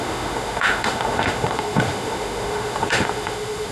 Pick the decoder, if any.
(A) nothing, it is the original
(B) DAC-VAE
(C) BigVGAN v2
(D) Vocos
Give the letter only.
B